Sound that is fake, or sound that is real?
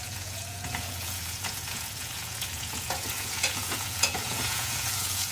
fake